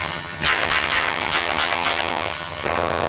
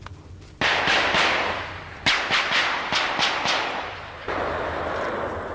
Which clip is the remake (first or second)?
first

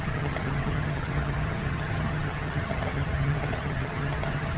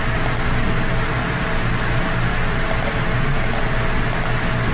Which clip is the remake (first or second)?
first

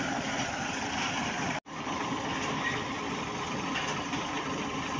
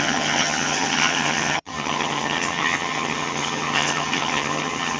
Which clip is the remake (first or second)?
second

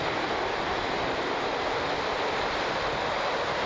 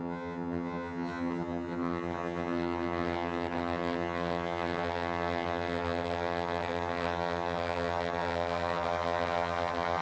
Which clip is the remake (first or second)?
second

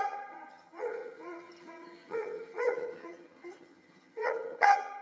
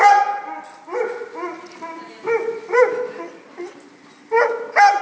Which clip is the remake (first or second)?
first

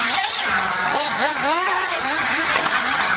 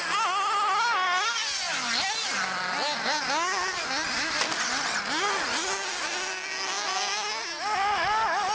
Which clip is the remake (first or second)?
first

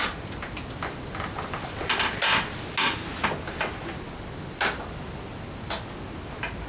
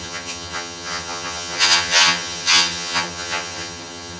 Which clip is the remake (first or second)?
second